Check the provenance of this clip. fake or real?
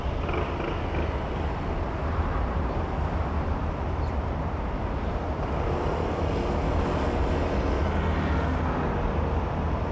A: real